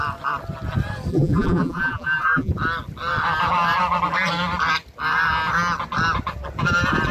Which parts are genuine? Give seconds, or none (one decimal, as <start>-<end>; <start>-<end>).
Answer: 0.0-1.1; 2.5-7.1